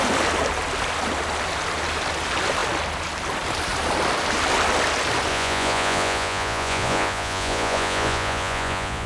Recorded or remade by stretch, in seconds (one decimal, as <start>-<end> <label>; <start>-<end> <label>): 0.0-5.3 recorded; 5.3-9.1 remade